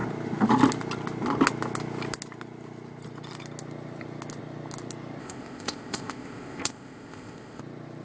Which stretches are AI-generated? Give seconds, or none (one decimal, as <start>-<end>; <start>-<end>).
5.2-7.6